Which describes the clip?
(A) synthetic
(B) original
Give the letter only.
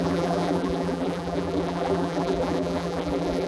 A